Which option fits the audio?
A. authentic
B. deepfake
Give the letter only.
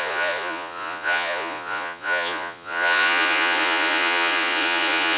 B